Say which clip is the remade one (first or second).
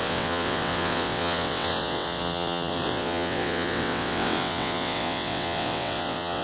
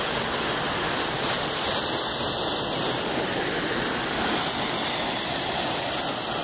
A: first